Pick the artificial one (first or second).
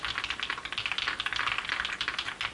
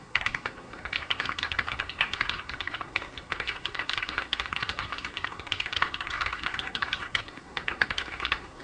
second